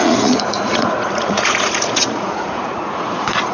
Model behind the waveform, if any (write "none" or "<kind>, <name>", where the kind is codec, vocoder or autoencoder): vocoder, Vocos